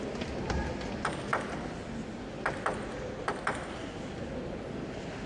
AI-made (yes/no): no